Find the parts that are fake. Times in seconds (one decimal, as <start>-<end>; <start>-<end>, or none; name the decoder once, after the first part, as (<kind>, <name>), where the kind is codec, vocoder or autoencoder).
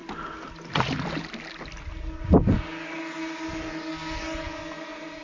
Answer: none